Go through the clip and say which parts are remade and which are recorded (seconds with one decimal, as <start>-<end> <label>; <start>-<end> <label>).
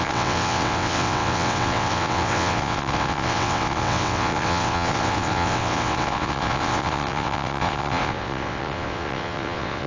0.0-9.9 remade